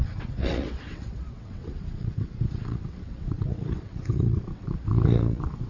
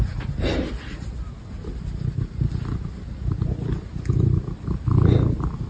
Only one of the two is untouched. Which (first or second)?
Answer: second